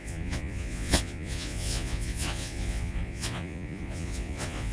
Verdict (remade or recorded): remade